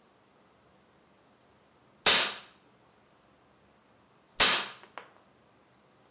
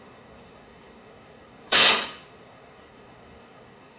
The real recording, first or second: first